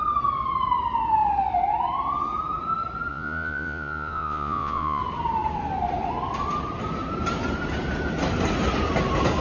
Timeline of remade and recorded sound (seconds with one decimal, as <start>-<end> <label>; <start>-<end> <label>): 0.0-3.1 recorded; 3.1-5.0 remade; 5.0-9.4 recorded